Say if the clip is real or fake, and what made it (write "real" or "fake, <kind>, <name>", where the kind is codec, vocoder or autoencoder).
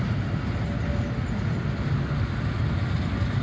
real